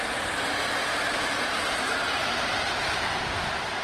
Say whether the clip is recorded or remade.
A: recorded